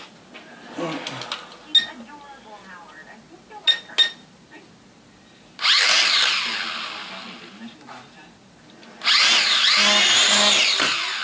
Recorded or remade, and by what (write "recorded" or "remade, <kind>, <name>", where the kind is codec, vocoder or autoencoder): recorded